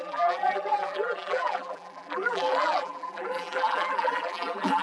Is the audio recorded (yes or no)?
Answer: no